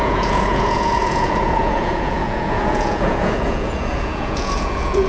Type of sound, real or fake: fake